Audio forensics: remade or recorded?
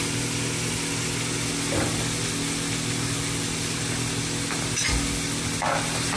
recorded